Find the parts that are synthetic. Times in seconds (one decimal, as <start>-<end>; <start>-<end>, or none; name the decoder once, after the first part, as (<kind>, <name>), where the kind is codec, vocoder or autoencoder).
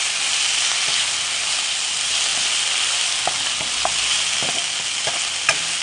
none